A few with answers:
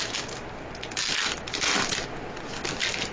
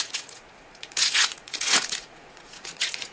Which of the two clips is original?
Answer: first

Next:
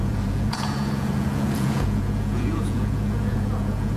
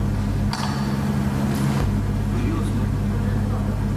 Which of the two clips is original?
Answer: second